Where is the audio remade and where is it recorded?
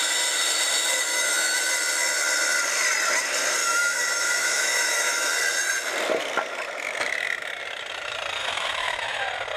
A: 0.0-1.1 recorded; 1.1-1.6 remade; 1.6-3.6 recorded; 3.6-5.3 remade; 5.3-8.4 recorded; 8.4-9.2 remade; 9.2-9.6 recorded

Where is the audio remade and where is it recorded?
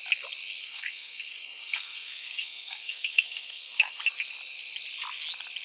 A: 0.0-0.6 recorded; 0.6-4.0 remade; 4.0-5.6 recorded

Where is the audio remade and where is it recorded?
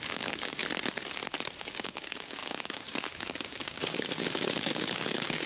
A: 0.0-0.6 remade; 0.6-1.6 recorded; 1.6-5.5 remade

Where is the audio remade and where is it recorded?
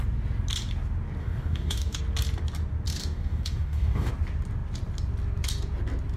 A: 0.0-1.2 recorded; 1.2-2.0 remade; 2.0-3.0 recorded; 3.0-4.1 remade; 4.1-6.2 recorded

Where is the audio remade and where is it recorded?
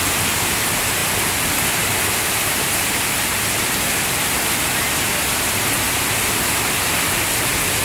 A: 0.0-7.8 recorded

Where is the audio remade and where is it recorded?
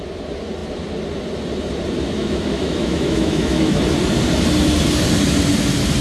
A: 0.0-2.0 recorded; 2.0-3.8 remade; 3.8-6.0 recorded